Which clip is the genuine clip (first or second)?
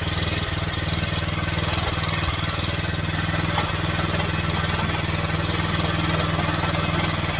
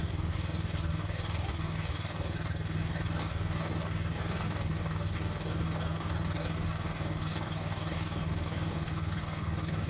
first